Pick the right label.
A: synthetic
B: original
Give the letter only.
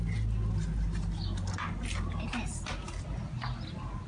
B